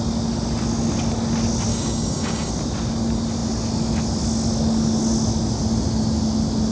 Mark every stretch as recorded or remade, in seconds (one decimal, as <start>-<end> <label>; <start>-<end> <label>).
0.0-1.7 recorded; 1.7-2.5 remade; 2.5-6.7 recorded